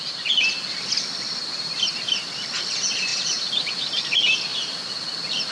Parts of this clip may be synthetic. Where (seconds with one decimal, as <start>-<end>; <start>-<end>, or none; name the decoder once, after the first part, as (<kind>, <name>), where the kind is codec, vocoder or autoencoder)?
0.7-2.5 (vocoder, BigVGAN v2); 3.1-4.0